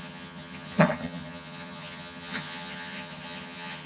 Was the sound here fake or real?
fake